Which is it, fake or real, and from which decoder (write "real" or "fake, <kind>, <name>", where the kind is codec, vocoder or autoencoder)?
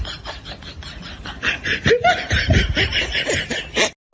real